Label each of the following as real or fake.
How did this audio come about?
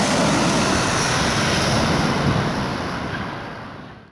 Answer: real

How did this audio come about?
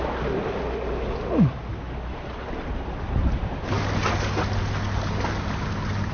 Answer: real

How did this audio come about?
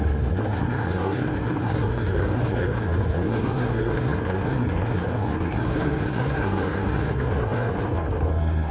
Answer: fake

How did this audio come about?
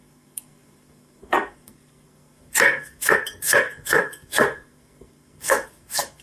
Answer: fake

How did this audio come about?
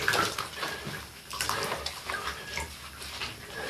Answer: real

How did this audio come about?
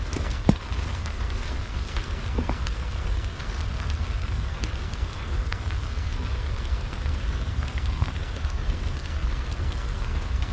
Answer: fake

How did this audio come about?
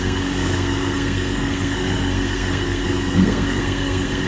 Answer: fake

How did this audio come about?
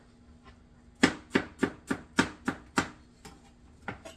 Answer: real